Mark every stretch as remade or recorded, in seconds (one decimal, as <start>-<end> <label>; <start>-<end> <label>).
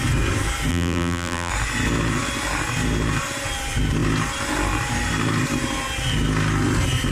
0.0-0.7 recorded; 0.7-1.5 remade; 1.5-7.1 recorded